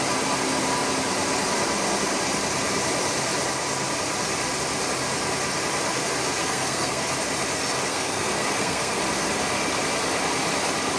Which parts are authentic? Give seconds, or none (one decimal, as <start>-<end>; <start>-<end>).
0.0-6.4; 7.0-7.9; 9.0-11.0